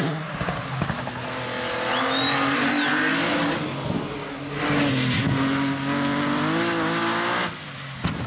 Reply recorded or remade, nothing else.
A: recorded